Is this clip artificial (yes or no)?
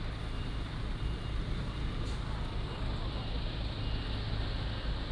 no